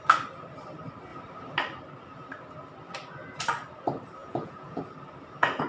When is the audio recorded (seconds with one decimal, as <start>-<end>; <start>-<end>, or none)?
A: 0.0-4.2; 4.8-5.7